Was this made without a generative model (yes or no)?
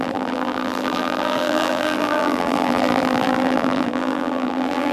no